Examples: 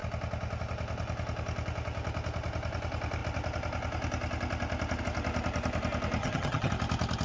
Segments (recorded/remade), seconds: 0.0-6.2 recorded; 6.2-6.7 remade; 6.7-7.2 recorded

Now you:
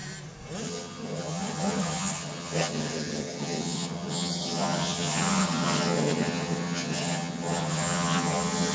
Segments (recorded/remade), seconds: 0.0-0.6 recorded; 0.6-8.7 remade

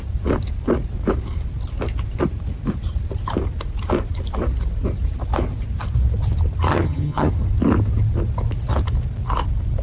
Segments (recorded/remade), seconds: 0.0-6.7 recorded; 6.7-7.3 remade; 7.3-9.8 recorded

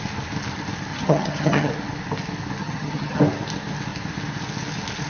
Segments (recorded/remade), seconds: 0.0-0.9 recorded; 0.9-1.7 remade; 1.7-2.6 recorded; 2.6-3.2 remade; 3.2-5.1 recorded